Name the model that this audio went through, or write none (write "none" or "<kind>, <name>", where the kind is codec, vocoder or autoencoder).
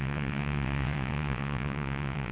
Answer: vocoder, WaveNeXt